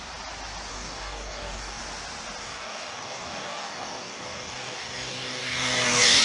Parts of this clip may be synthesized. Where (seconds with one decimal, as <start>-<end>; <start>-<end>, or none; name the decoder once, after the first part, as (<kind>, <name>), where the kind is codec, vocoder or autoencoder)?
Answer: 0.7-1.8 (codec, DAC); 2.4-6.2